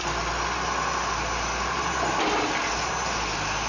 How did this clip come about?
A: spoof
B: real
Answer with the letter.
B